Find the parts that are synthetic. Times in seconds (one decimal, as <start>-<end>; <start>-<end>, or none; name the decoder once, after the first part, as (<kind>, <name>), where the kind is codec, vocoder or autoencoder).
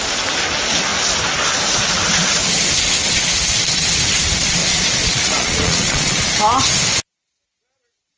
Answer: 4.6-6.3 (vocoder, Vocos)